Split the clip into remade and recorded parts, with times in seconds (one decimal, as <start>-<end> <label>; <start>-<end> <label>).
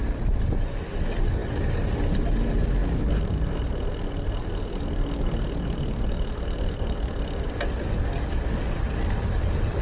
0.0-9.8 recorded